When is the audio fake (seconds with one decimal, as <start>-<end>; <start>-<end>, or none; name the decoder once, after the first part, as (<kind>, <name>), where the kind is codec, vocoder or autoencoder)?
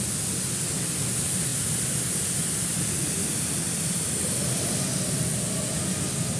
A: none